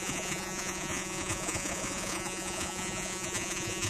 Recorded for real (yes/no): no